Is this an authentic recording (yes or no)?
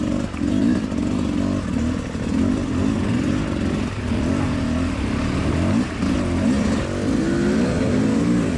yes